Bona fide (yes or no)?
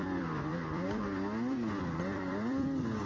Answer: no